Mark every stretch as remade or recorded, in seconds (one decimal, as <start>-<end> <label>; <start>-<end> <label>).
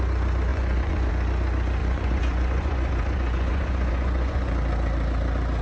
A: 0.0-0.5 recorded; 0.5-1.1 remade; 1.1-1.8 recorded; 1.8-4.5 remade; 4.5-5.6 recorded